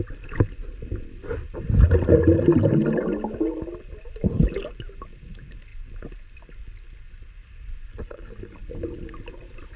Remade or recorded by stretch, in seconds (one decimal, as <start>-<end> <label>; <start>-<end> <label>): 0.0-7.9 recorded; 7.9-8.6 remade; 8.6-9.8 recorded